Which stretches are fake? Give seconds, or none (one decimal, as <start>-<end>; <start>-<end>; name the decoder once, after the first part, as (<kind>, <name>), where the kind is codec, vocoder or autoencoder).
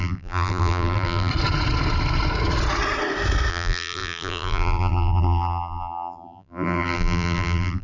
0.0-1.3 (vocoder, BigVGAN v2); 3.5-7.8